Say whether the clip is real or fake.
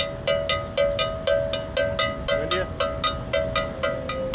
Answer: real